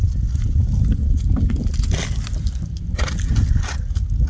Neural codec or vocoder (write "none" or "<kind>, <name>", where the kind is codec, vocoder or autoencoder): none